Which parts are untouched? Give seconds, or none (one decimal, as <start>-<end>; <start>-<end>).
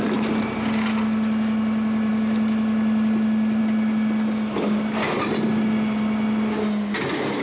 0.0-7.4